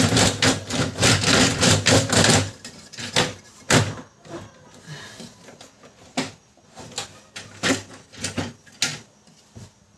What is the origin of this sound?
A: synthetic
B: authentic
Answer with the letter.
B